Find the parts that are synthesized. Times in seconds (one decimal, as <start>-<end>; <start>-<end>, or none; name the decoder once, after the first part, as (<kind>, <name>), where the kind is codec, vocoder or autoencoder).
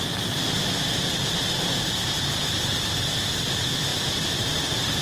0.9-2.5 (vocoder, BigVGAN v2); 3.9-5.0